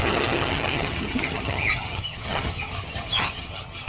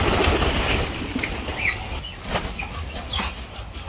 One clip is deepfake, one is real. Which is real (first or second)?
second